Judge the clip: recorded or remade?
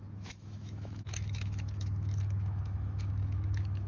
remade